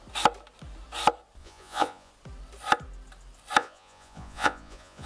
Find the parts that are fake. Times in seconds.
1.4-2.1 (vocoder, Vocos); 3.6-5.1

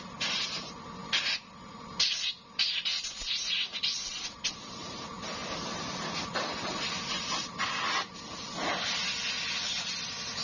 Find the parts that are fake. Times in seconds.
1.0-1.7 (vocoder, BigVGAN v2); 3.4-4.7; 5.4-6.9

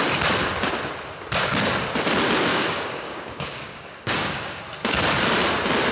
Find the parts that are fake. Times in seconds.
2.5-4.6 (codec, DAC)